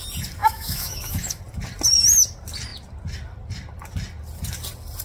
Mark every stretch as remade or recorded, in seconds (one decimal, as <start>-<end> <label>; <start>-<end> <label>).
0.0-0.4 recorded; 0.4-1.4 remade; 1.4-5.0 recorded